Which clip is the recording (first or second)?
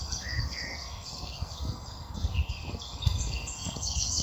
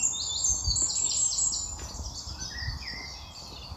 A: second